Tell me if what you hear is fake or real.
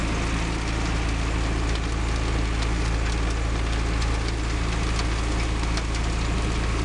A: real